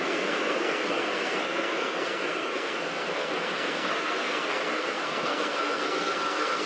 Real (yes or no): no